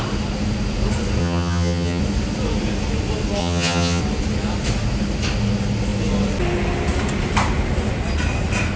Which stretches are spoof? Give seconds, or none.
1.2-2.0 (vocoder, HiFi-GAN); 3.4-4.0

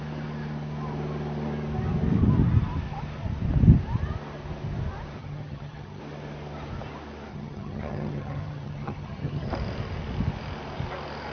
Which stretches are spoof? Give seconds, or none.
5.2-6.0 (vocoder, HiFi-GAN); 7.3-9.5

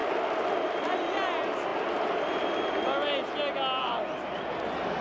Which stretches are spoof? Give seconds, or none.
none

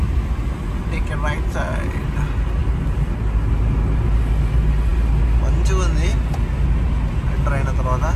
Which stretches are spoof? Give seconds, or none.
2.6-3.5 (vocoder, BigVGAN v2)